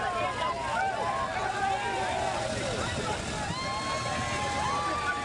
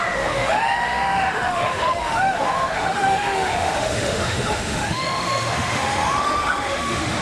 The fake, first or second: second